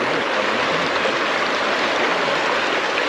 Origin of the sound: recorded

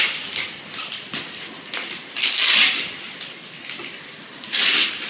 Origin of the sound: recorded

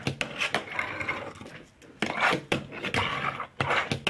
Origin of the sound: recorded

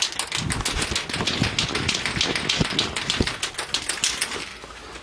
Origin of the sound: recorded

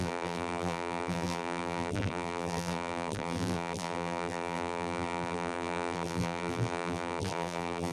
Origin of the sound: remade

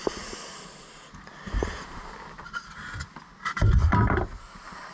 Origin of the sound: recorded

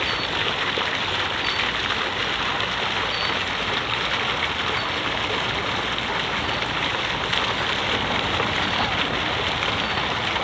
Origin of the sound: recorded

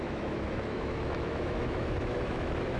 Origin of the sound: remade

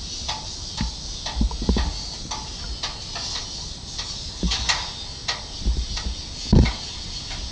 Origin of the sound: recorded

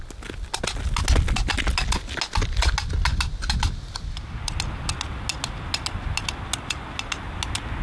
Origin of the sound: recorded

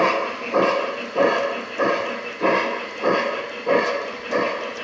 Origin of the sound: recorded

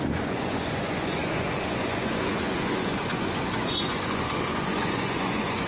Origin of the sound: remade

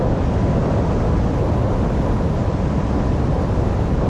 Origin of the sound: recorded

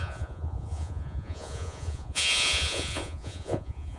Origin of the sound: remade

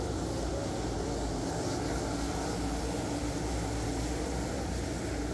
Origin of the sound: recorded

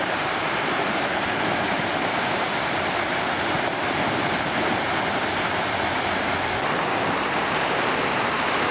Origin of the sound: recorded